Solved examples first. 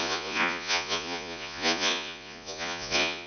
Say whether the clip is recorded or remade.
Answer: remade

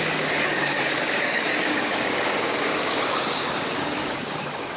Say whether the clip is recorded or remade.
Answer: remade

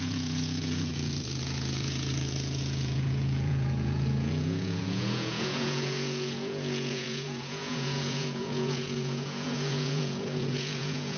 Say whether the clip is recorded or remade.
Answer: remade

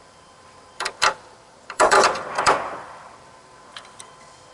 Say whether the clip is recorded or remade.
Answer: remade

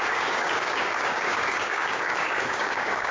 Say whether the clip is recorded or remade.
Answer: remade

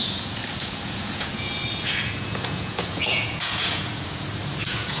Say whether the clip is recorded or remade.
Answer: remade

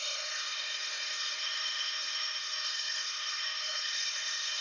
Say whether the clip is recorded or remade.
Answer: remade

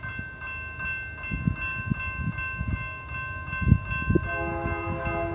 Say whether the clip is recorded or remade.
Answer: recorded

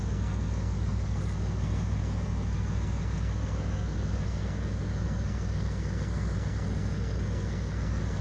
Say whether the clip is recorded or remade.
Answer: remade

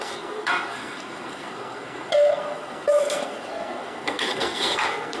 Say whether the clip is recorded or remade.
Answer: remade